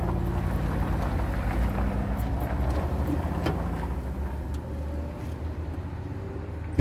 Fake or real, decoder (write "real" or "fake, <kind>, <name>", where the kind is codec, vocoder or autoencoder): real